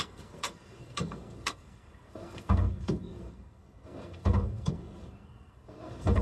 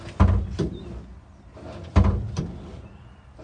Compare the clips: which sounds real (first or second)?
second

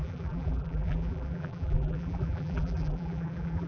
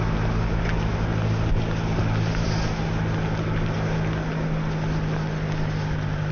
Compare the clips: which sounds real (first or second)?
second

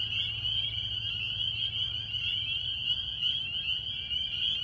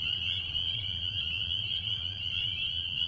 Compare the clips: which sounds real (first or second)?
first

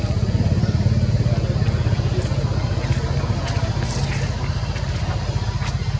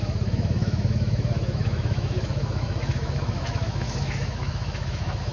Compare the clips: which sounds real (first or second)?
first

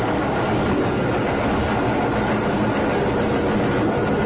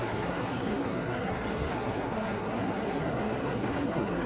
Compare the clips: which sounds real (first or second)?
first